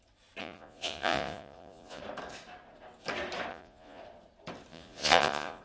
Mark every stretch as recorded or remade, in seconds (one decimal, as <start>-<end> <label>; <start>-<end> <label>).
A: 0.0-0.4 recorded; 0.4-2.0 remade; 2.0-3.5 recorded; 3.5-4.0 remade; 4.0-4.7 recorded; 4.7-5.6 remade